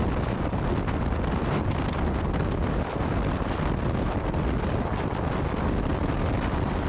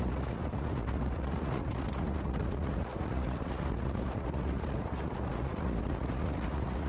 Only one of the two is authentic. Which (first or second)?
first